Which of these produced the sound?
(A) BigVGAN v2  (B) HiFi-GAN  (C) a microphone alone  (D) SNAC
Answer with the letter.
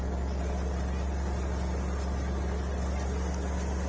C